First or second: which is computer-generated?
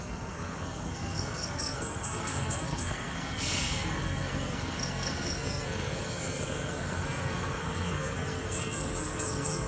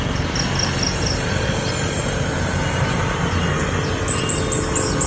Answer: first